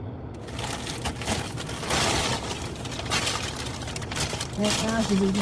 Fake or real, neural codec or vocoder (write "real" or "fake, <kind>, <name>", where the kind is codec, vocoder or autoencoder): real